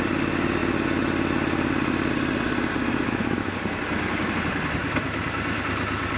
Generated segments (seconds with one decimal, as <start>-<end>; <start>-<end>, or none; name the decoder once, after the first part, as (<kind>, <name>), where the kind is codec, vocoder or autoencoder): none